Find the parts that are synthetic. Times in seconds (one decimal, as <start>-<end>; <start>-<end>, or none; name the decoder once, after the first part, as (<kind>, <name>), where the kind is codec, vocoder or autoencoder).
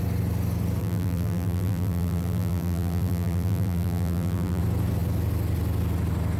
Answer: 0.8-4.6 (vocoder, BigVGAN v2)